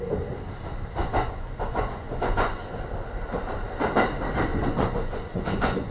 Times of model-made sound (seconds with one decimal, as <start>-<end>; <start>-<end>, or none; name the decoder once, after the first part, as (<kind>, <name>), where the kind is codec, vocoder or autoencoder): 1.0-2.8 (vocoder, Vocos); 4.5-5.9